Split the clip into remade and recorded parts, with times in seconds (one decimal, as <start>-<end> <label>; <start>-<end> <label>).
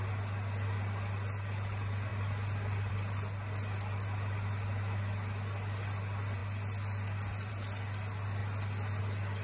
0.0-9.4 recorded